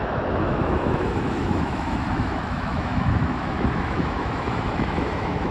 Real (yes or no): no